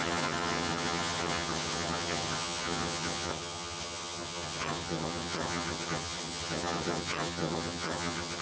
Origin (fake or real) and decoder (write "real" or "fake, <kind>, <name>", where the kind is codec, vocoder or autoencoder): fake, vocoder, HiFi-GAN